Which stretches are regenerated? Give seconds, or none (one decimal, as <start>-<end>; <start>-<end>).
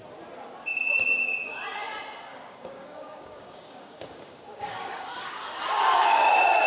2.3-6.3